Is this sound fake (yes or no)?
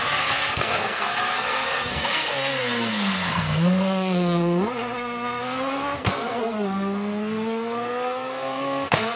yes